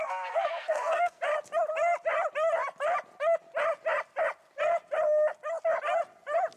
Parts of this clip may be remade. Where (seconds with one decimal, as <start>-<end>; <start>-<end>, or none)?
0.0-1.2